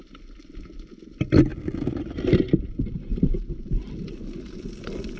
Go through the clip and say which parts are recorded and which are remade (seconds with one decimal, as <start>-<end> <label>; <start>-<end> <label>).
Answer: 0.0-5.2 recorded